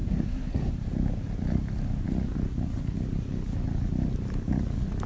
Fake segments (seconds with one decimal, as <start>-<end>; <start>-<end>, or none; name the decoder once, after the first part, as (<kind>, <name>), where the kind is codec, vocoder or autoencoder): 0.0-0.7 (codec, SNAC)